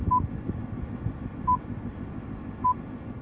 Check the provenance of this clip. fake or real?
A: real